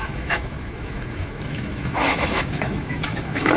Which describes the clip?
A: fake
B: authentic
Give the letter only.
A